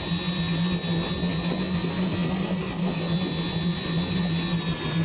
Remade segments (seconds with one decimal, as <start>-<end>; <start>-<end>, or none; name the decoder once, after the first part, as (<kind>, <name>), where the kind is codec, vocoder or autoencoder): none